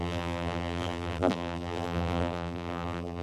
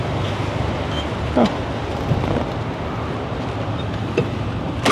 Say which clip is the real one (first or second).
second